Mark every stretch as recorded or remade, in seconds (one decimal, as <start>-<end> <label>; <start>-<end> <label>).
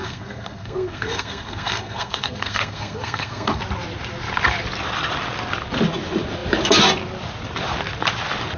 0.0-3.6 remade; 3.6-8.6 recorded